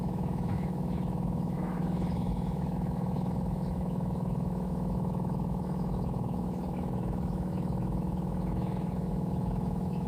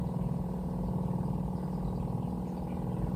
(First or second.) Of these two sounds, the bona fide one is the second